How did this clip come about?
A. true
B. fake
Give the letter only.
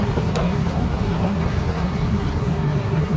B